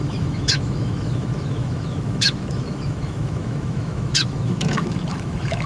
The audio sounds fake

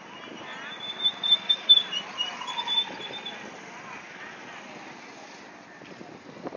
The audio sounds real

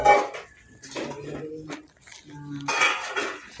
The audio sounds real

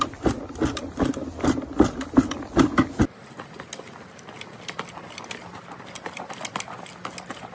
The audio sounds real